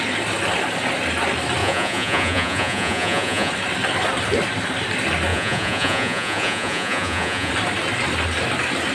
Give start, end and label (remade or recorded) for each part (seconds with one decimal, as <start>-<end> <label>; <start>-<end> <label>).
0.0-1.6 recorded; 1.6-3.5 remade; 3.5-5.3 recorded; 5.3-7.5 remade; 7.5-8.9 recorded